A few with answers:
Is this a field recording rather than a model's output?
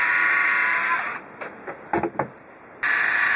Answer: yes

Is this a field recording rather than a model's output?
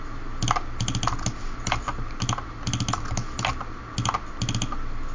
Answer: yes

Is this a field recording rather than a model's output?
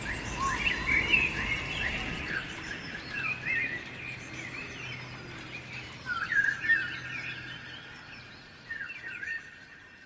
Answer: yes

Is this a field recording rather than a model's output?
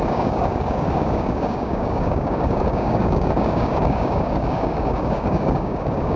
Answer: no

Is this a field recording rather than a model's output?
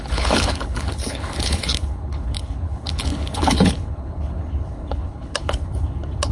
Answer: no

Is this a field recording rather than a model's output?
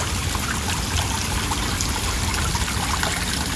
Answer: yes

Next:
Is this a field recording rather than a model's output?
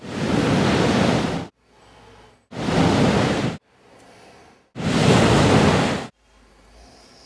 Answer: yes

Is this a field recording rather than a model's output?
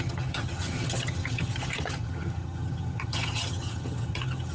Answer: no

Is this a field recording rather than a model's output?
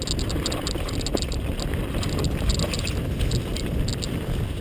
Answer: yes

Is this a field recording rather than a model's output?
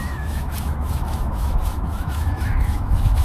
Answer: no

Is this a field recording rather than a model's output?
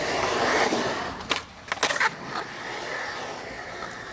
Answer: yes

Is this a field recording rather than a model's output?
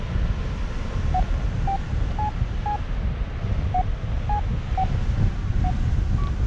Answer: yes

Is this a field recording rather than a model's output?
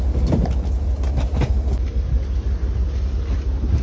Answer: yes